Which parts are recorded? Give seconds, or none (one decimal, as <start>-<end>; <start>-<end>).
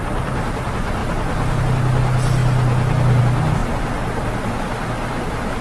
0.0-5.6